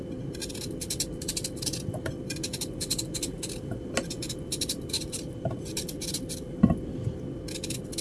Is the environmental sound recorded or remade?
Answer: recorded